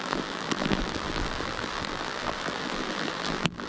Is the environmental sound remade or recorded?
remade